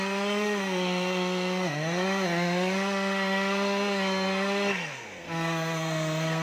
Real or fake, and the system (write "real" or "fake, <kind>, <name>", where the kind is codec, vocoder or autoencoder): fake, codec, SNAC